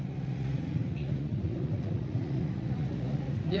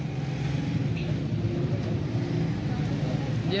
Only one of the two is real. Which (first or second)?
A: second